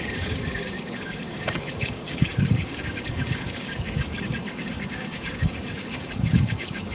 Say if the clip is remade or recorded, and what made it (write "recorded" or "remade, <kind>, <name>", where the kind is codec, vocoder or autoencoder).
remade, codec, DAC